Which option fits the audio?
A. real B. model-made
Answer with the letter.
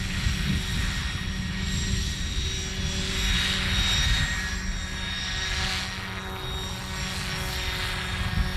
A